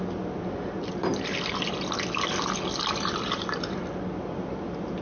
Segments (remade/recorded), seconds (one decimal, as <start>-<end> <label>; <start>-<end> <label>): 0.0-5.0 recorded